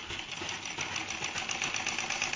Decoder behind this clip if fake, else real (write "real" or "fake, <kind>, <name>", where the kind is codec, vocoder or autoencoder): real